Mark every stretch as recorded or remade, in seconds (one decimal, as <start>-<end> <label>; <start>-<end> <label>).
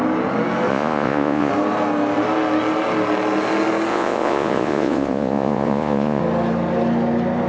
0.0-0.7 recorded; 0.7-1.5 remade; 1.5-3.9 recorded; 3.9-6.2 remade; 6.2-7.5 recorded